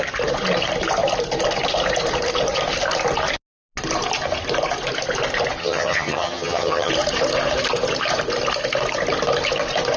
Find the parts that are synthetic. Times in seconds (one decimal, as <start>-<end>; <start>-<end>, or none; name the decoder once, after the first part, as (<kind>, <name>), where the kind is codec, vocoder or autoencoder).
5.6-6.9 (vocoder, HiFi-GAN)